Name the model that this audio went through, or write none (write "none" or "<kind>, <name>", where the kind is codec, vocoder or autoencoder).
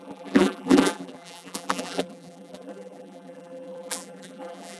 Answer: vocoder, BigVGAN v2